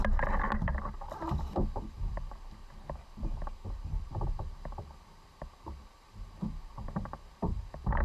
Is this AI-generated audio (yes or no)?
no